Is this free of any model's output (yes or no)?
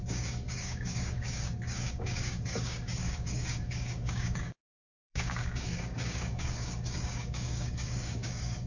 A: no